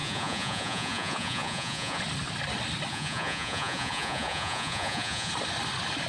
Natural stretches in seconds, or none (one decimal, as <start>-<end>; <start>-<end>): 2.0-2.9; 5.3-6.1

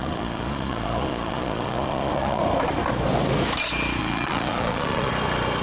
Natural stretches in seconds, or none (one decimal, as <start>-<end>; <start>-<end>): 2.4-4.0; 5.1-5.6